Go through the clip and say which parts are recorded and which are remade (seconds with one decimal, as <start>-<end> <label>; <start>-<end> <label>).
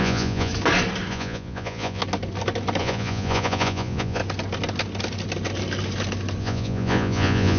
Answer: 0.0-0.5 remade; 0.5-1.1 recorded; 1.1-2.0 remade; 2.0-2.8 recorded; 2.8-4.2 remade; 4.2-6.4 recorded; 6.4-7.6 remade